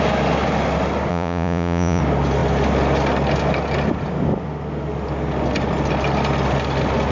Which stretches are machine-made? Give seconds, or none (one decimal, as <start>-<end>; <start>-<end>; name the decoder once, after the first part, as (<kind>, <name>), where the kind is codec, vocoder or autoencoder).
1.1-2.0 (vocoder, Vocos)